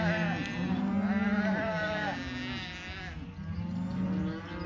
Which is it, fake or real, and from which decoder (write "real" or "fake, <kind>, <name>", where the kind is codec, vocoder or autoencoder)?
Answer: real